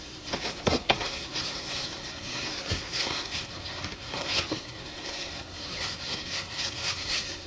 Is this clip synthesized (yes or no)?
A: yes